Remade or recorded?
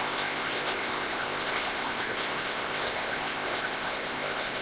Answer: remade